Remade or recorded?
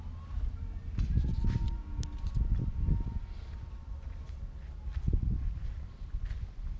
recorded